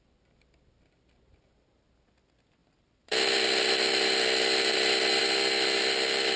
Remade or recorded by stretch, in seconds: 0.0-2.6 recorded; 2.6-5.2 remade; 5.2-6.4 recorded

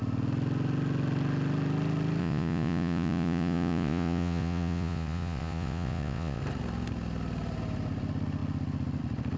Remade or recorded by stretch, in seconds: 0.0-2.2 recorded; 2.2-6.4 remade; 6.4-9.4 recorded

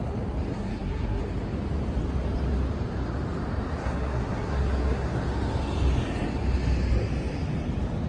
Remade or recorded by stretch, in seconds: 0.0-0.5 recorded; 0.5-1.2 remade; 1.2-3.8 recorded; 3.8-5.1 remade; 5.1-8.1 recorded

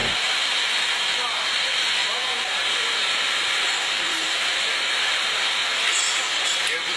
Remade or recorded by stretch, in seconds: 0.0-1.0 recorded; 1.0-5.6 remade; 5.6-6.2 recorded; 6.2-7.0 remade

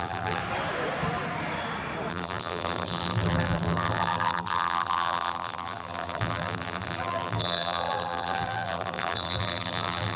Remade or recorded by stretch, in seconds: 0.0-0.4 remade; 0.4-2.1 recorded; 2.1-10.2 remade

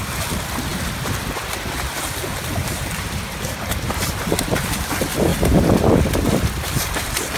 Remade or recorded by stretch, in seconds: 0.0-2.6 recorded; 2.6-3.5 remade; 3.5-7.4 recorded